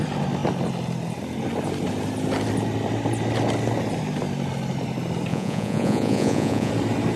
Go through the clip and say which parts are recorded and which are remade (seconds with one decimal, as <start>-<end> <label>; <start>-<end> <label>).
0.0-5.3 recorded; 5.3-6.7 remade; 6.7-7.2 recorded